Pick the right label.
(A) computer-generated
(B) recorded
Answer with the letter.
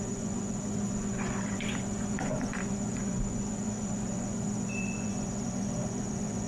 A